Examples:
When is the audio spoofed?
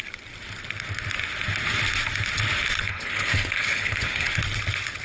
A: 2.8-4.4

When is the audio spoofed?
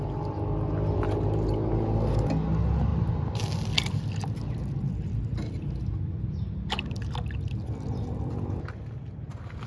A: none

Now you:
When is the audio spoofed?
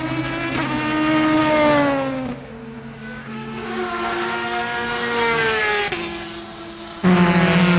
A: 1.4-2.5; 3.0-5.6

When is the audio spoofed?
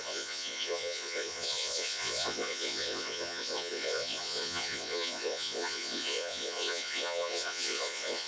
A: 0.0-8.3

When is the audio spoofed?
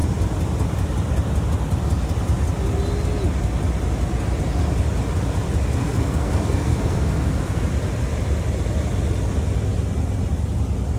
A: 5.8-7.6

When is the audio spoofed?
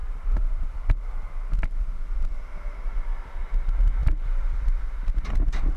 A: 0.0-1.1; 4.0-4.8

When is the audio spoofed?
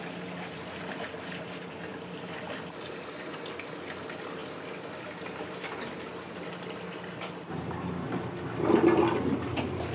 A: none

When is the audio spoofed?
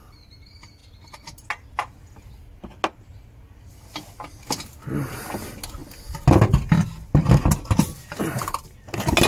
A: none